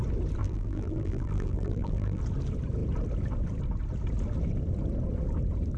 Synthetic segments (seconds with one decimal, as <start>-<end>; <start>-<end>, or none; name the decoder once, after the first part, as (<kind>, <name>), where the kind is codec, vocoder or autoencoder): 0.4-2.2 (vocoder, BigVGAN v2)